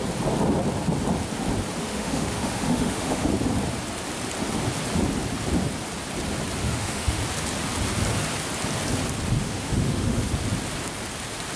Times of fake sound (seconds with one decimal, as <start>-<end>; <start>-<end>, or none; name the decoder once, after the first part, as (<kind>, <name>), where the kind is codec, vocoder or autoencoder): 1.8-3.3 (autoencoder, DAC-VAE); 6.6-7.2; 9.4-10.3